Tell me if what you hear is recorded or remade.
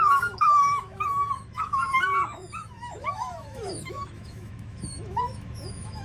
remade